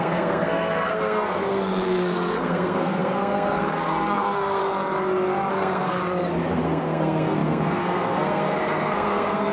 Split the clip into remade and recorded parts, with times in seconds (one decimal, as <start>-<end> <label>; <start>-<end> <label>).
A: 0.0-4.6 remade; 4.6-5.5 recorded; 5.5-6.0 remade; 6.0-6.5 recorded; 6.5-9.5 remade